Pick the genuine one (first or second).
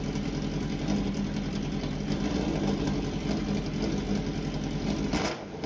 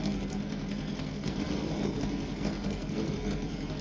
first